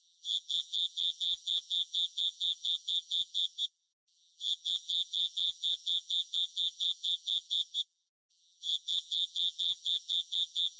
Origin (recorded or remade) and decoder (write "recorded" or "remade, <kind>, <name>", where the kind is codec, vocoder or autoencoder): remade, vocoder, BigVGAN v2